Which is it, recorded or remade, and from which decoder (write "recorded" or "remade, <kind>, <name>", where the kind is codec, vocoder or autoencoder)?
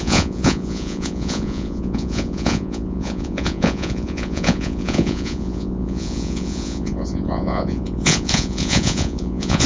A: remade, vocoder, Vocos